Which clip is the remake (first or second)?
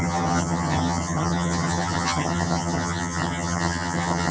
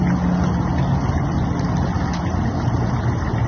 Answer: first